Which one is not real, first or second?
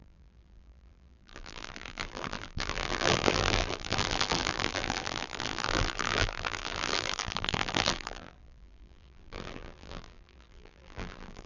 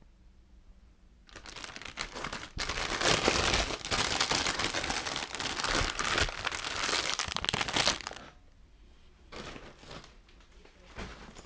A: first